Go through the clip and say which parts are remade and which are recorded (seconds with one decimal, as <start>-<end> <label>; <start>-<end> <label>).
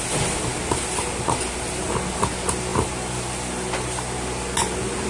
0.0-2.7 recorded; 2.7-3.8 remade; 3.8-5.1 recorded